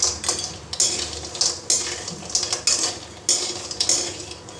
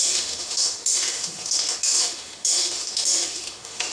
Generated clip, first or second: second